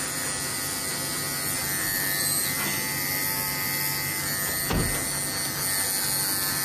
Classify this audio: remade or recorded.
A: recorded